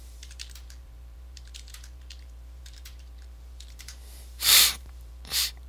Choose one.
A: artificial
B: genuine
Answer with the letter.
A